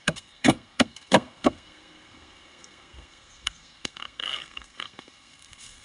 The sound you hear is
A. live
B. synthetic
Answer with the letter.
B